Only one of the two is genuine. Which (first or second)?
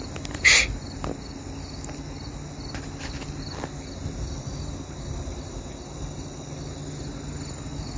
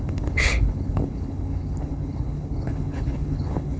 first